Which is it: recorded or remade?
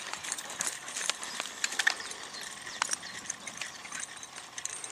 recorded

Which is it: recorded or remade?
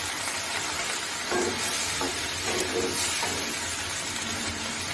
remade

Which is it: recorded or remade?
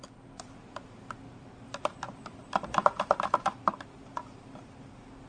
recorded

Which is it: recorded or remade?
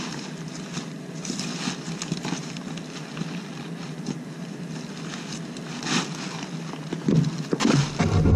recorded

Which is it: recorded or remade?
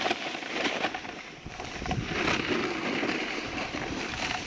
recorded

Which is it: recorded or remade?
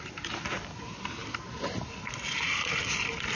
recorded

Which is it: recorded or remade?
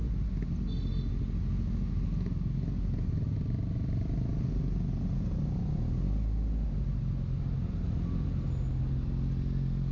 recorded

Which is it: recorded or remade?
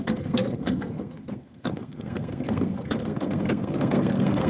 remade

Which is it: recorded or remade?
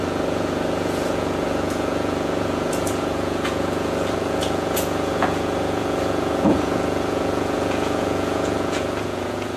remade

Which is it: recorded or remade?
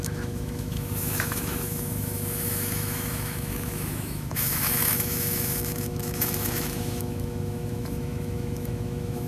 remade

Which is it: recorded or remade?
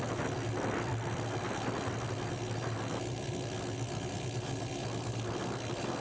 recorded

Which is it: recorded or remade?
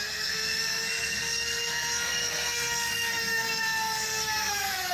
remade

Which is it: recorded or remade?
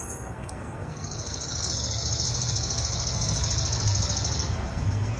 remade